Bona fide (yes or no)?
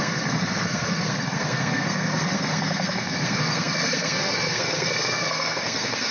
no